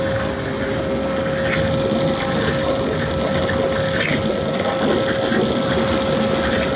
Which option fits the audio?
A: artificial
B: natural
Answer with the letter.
B